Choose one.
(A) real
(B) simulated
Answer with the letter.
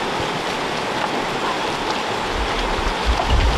A